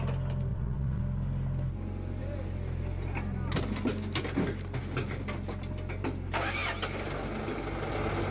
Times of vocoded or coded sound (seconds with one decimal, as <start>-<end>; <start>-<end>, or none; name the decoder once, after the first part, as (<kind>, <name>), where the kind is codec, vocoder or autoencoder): 0.5-1.0 (vocoder, WaveNeXt)